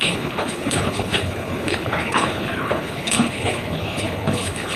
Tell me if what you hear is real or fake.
fake